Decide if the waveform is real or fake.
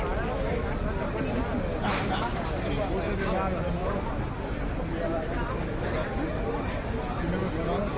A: real